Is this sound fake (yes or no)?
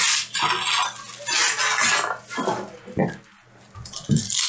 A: no